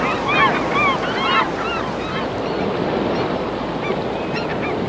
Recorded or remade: recorded